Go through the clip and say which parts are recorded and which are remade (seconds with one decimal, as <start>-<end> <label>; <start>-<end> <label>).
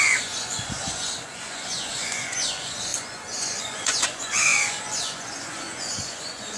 0.0-6.6 remade